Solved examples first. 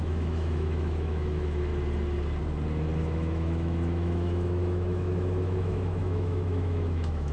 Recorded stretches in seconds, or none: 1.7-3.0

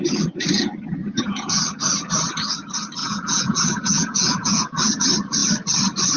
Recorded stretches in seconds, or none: 0.0-1.0; 1.6-3.0; 5.0-6.2

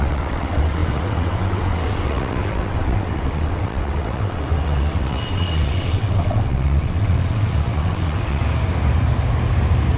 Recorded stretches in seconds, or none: 8.4-10.0

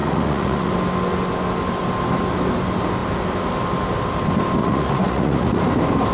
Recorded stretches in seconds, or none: 0.7-4.6; 5.6-6.1